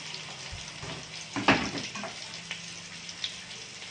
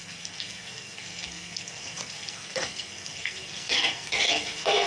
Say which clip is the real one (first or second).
first